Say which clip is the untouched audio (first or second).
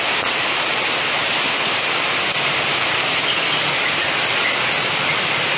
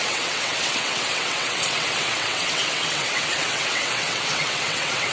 first